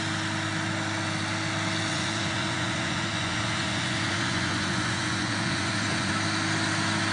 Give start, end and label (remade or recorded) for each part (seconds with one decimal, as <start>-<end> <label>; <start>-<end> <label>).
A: 0.0-1.9 recorded; 1.9-6.1 remade; 6.1-7.1 recorded